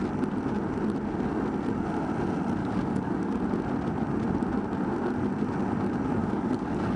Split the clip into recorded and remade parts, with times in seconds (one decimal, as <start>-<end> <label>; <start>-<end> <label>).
0.0-2.6 recorded; 2.6-3.4 remade; 3.4-6.2 recorded; 6.2-7.0 remade